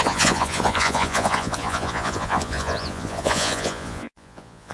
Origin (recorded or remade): remade